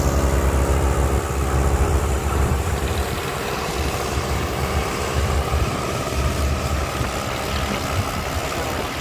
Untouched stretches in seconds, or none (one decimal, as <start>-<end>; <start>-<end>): 0.0-1.9; 7.1-9.0

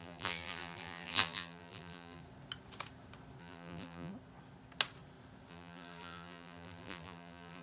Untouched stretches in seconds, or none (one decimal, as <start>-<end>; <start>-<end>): 2.2-3.4; 4.1-5.5

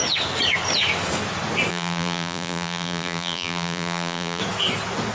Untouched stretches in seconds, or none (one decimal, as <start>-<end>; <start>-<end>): 0.0-1.7; 4.4-5.1

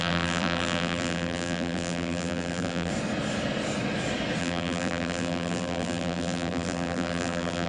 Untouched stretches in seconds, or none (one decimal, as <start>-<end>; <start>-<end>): 2.9-4.4

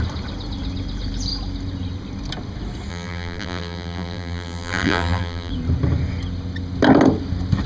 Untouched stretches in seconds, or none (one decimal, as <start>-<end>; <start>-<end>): 0.0-2.9; 5.5-7.7

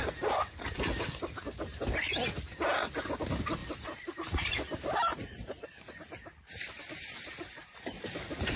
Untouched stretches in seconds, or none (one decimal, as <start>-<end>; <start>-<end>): 0.0-3.6; 8.1-8.6

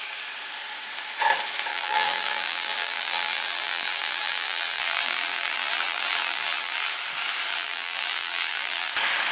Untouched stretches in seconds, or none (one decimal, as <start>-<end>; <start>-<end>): 0.0-1.7; 6.9-7.5; 8.9-9.3